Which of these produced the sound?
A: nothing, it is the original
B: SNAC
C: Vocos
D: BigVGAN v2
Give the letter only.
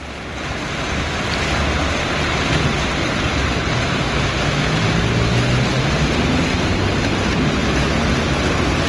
A